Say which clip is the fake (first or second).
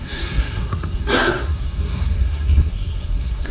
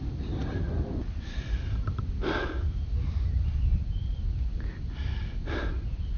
first